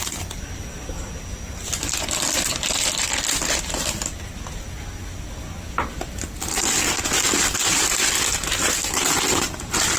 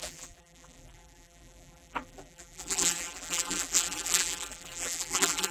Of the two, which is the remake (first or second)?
second